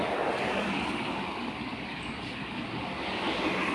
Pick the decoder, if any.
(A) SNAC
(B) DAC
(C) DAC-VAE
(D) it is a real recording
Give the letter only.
B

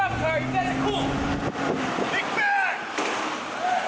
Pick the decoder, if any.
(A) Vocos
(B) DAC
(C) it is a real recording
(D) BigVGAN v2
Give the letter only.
C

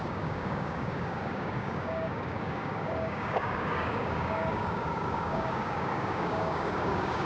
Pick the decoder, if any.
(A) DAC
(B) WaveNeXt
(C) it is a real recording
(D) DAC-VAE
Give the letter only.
A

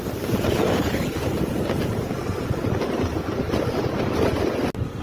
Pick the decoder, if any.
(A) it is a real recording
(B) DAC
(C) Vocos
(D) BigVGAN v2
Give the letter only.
A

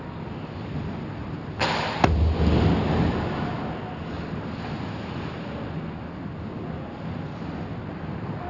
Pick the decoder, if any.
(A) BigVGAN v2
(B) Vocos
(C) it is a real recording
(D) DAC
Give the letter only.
C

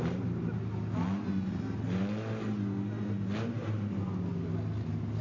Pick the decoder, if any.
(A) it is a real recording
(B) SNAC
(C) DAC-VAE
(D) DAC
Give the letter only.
A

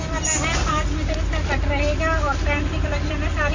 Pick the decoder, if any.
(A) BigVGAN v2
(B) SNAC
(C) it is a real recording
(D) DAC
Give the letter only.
C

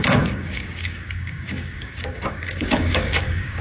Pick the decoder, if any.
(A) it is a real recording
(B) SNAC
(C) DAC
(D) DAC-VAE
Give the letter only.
C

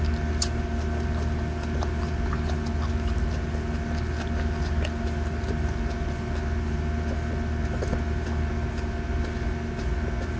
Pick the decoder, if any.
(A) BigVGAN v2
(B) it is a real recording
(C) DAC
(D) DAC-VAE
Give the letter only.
B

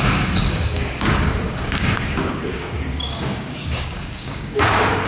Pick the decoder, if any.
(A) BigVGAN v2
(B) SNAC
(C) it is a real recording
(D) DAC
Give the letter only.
D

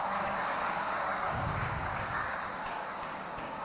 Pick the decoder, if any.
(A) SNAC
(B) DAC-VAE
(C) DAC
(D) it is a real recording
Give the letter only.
C